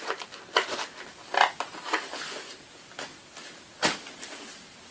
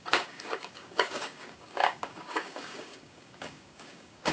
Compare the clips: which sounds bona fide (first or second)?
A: first